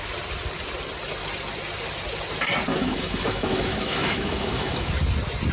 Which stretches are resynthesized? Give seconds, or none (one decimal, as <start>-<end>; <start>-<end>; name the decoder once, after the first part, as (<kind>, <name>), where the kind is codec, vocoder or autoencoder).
2.7-4.9 (autoencoder, DAC-VAE)